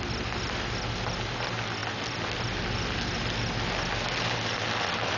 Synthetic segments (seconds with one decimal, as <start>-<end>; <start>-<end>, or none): none